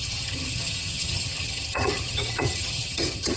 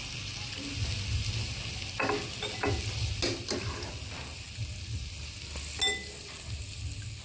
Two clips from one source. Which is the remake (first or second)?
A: first